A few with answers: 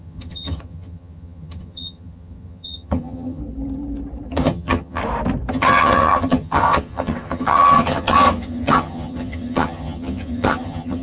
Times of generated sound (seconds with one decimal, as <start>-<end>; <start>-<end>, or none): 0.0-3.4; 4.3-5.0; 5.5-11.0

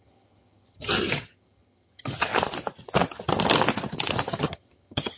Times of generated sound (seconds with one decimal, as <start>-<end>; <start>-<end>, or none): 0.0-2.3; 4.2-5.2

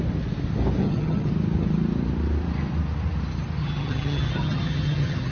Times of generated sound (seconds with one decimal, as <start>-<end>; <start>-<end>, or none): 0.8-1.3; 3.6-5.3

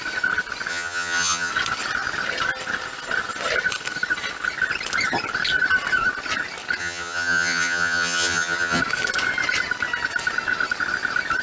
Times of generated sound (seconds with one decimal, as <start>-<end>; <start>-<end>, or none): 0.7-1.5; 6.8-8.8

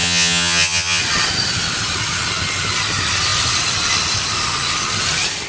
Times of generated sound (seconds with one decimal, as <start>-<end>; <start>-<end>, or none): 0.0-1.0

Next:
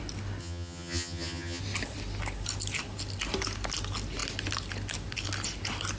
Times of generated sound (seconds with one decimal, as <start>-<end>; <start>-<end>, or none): 0.4-1.6

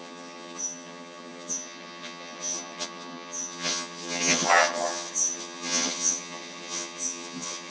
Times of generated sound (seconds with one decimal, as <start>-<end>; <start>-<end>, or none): 0.0-7.7

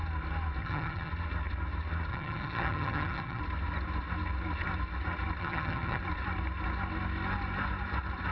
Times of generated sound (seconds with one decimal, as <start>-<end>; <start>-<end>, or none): 0.6-1.1; 2.1-3.4; 5.4-6.0